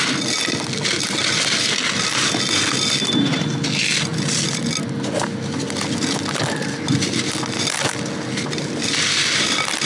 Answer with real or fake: real